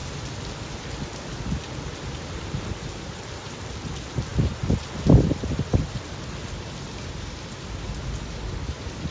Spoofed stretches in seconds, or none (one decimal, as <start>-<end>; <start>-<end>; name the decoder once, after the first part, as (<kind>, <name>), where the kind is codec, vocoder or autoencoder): none